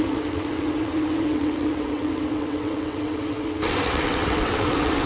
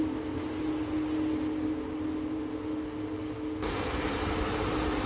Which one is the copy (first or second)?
first